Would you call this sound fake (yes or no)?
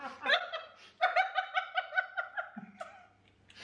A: no